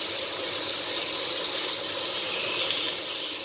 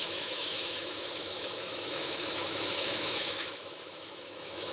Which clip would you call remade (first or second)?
second